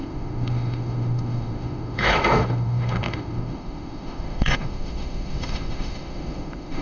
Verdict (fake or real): fake